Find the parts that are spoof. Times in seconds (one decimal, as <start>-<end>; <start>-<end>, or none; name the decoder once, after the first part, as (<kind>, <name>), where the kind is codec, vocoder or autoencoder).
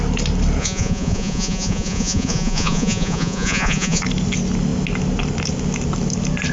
0.6-4.0 (vocoder, Vocos)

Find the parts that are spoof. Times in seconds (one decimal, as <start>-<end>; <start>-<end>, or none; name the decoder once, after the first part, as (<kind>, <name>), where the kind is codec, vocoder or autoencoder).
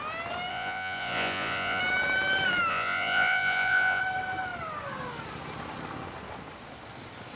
0.5-1.8 (vocoder, Vocos); 2.7-4.0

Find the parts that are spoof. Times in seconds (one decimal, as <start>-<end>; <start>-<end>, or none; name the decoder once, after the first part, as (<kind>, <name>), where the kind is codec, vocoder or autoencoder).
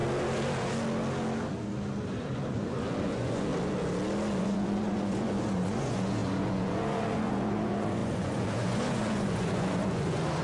2.5-3.5 (vocoder, Vocos); 4.4-10.4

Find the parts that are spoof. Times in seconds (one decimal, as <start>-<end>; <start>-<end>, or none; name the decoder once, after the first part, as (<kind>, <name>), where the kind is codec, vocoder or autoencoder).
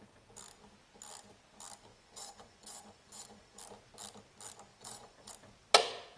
1.9-3.6 (vocoder, Vocos); 4.7-5.3